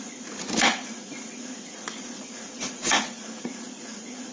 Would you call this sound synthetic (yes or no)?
yes